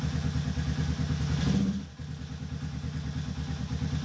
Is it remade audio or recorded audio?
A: recorded